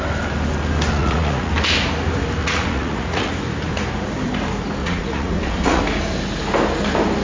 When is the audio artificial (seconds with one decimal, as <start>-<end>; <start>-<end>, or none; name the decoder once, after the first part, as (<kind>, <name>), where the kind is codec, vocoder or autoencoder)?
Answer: 0.9-1.5 (vocoder, Vocos); 2.4-3.3; 4.8-5.8